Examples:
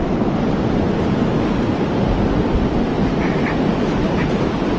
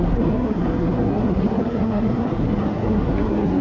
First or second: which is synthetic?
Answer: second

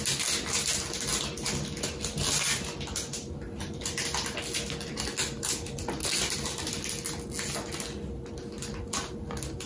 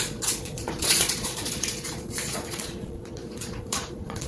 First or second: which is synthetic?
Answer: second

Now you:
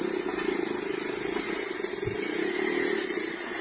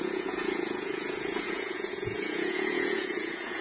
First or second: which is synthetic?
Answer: second